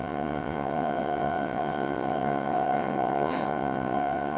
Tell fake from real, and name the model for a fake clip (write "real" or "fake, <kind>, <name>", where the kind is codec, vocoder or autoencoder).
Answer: fake, vocoder, WaveNeXt